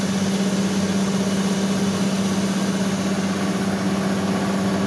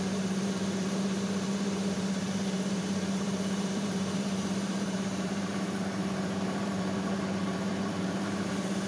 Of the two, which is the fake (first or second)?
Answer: second